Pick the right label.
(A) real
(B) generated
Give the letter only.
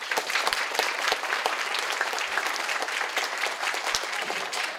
B